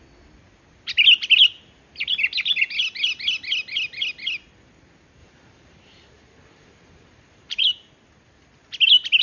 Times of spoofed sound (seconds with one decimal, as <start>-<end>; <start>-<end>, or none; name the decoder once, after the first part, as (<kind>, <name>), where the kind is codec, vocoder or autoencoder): 5.2-7.6 (vocoder, BigVGAN v2)